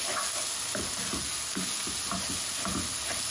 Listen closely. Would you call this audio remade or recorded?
recorded